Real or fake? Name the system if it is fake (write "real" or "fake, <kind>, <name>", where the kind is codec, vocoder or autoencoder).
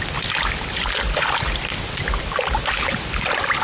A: real